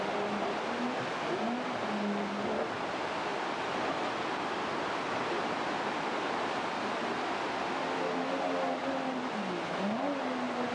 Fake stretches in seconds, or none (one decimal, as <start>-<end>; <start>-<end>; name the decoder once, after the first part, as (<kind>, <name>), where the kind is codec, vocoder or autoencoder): 3.3-5.9 (vocoder, BigVGAN v2)